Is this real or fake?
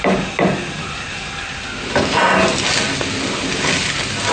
real